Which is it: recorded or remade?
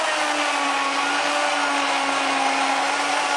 recorded